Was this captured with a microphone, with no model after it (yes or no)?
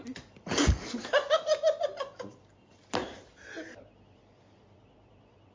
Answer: yes